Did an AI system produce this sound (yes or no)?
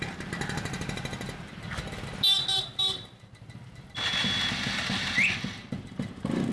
no